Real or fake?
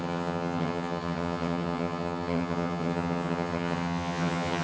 fake